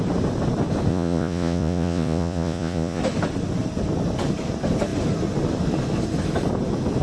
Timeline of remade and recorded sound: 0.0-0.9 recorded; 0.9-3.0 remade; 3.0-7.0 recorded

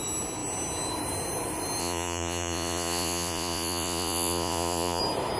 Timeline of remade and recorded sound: 0.0-1.8 recorded; 1.8-5.0 remade; 5.0-5.4 recorded

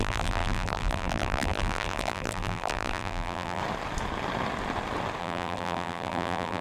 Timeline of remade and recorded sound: 0.0-3.6 remade; 3.6-5.2 recorded; 5.2-6.6 remade

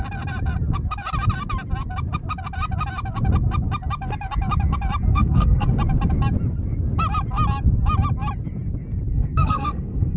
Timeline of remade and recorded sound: 0.0-5.1 recorded; 5.1-5.7 remade; 5.7-9.1 recorded; 9.1-10.2 remade

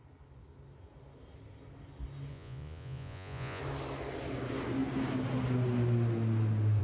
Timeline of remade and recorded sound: 0.0-2.3 recorded; 2.3-3.6 remade; 3.6-6.8 recorded